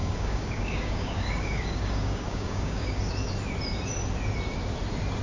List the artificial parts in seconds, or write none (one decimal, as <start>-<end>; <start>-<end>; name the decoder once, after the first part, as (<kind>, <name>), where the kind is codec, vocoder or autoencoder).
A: 0.0-3.1 (codec, DAC)

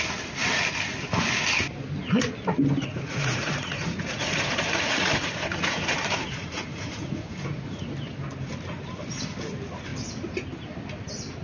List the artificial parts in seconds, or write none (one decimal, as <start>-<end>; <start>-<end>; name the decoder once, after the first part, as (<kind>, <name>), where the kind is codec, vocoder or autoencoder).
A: 2.8-7.8 (vocoder, Vocos)

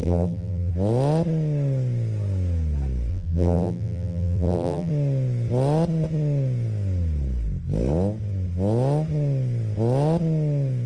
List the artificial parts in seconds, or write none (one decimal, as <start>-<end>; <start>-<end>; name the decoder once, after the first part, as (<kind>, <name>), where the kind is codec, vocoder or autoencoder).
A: 0.0-0.7 (vocoder, BigVGAN v2); 3.1-4.9

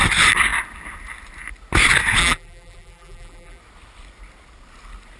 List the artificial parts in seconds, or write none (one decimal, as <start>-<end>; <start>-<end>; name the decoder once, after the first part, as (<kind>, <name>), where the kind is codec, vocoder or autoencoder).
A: 2.2-3.6 (vocoder, BigVGAN v2)

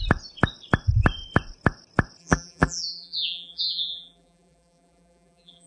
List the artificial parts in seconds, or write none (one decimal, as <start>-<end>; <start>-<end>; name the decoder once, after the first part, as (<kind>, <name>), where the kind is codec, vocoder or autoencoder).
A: 2.2-5.7 (vocoder, BigVGAN v2)